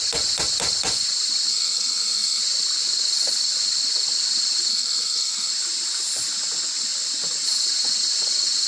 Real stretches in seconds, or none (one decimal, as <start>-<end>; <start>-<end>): 0.0-1.5; 2.4-4.7; 5.5-8.7